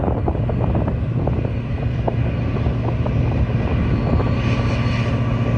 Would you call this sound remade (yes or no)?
no